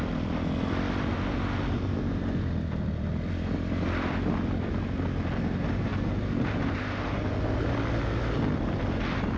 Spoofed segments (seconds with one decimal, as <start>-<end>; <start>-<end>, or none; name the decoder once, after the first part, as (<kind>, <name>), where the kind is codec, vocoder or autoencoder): none